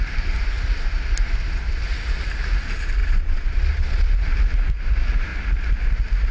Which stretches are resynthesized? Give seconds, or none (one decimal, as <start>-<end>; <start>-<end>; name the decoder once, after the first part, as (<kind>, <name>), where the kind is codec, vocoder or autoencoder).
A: 3.0-4.1 (vocoder, Vocos)